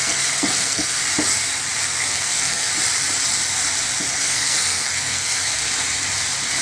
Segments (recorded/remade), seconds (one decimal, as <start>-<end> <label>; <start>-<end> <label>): 0.0-1.0 remade; 1.0-1.8 recorded; 1.8-2.7 remade; 2.7-4.2 recorded; 4.2-5.6 remade; 5.6-6.6 recorded